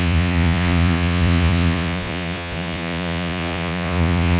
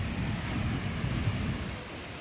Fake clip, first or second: first